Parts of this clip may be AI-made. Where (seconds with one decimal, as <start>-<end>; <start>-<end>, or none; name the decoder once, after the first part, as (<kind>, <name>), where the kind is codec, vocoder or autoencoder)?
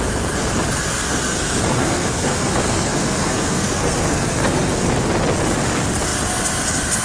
0.9-4.9 (codec, SNAC)